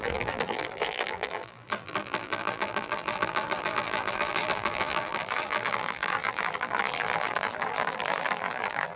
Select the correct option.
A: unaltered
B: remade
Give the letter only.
B